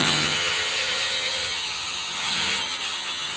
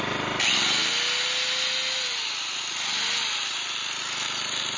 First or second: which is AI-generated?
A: first